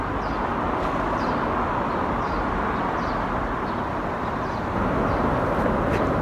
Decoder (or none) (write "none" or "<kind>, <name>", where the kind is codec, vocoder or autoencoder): none